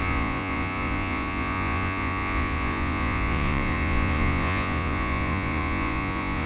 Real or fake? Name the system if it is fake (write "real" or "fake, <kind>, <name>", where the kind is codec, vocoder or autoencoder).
fake, vocoder, Vocos